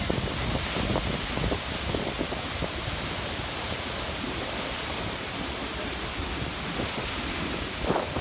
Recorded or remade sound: recorded